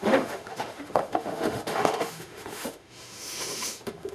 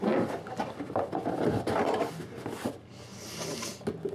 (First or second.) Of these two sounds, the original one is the second